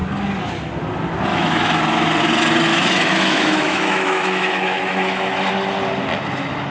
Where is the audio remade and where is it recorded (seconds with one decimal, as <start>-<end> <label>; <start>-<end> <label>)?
0.0-1.3 recorded; 1.3-1.8 remade; 1.8-2.7 recorded; 2.7-5.5 remade; 5.5-6.7 recorded